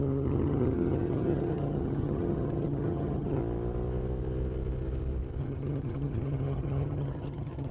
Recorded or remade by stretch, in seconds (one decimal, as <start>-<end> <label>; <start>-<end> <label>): 0.0-3.4 remade; 3.4-5.4 recorded; 5.4-7.7 remade